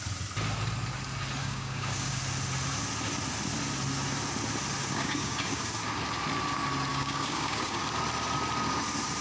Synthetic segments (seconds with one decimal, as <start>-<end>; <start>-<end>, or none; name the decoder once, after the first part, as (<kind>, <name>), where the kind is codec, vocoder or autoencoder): 1.4-2.2 (codec, DAC); 4.8-5.7; 6.9-7.8